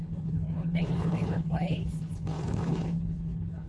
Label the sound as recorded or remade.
remade